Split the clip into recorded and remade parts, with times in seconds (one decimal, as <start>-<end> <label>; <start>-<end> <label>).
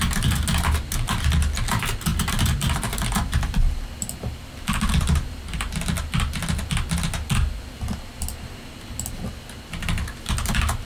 0.0-10.8 recorded